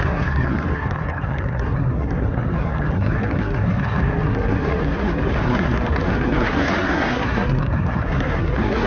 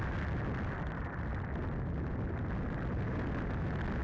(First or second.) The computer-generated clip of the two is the first